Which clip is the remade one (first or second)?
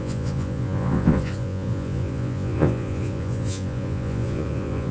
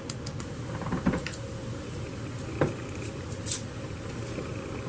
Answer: first